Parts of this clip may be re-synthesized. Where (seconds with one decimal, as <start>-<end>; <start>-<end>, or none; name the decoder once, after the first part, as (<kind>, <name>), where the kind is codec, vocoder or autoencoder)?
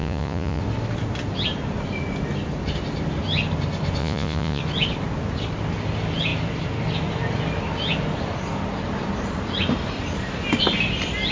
0.0-0.6 (vocoder, Vocos); 4.0-4.6